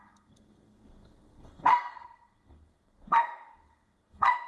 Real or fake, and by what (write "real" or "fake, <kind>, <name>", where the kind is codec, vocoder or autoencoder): fake, codec, SNAC